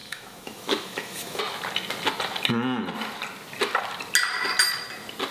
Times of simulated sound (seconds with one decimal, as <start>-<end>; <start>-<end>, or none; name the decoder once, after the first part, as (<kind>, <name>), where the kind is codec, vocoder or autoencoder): 0.0-1.4 (autoencoder, DAC-VAE)